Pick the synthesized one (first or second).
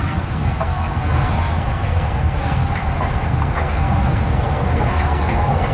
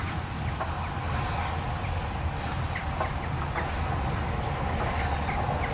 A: first